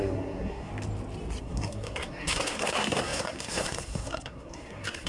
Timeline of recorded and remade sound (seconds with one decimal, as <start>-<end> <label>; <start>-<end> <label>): 0.0-0.7 remade; 0.7-1.4 recorded; 1.4-5.1 remade